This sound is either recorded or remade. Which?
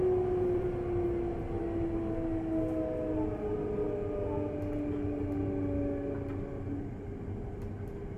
recorded